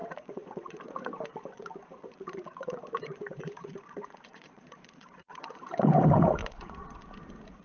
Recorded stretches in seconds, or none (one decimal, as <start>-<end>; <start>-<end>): 1.1-1.5; 5.8-6.4; 7.0-7.6